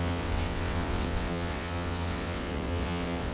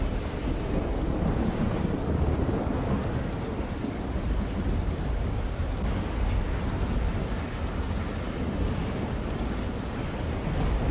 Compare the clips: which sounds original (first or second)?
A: second